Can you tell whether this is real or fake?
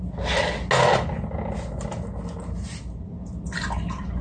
real